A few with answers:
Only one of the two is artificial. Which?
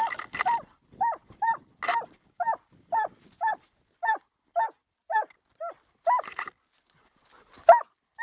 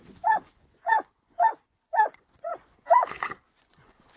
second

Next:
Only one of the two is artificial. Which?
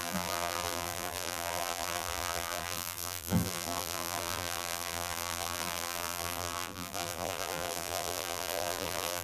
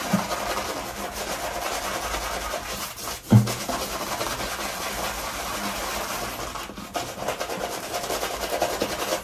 first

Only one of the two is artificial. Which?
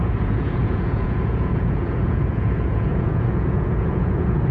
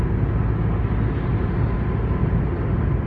first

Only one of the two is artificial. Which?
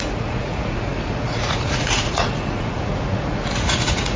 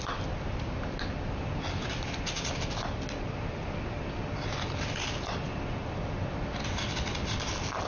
first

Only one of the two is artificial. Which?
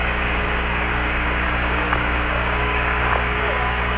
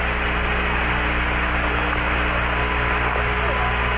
first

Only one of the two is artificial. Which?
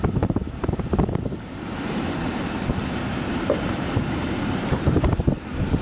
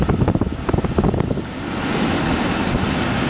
first